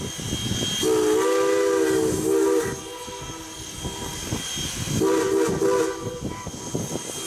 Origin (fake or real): real